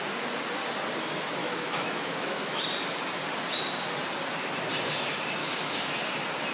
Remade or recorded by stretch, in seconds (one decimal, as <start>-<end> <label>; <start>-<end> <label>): 0.0-1.4 recorded; 1.4-2.6 remade; 2.6-5.4 recorded; 5.4-6.0 remade; 6.0-6.5 recorded